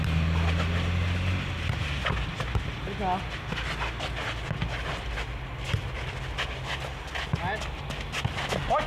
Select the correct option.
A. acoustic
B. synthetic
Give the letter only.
A